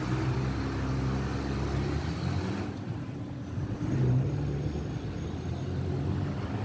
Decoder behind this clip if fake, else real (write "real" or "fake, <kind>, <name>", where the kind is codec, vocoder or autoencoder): real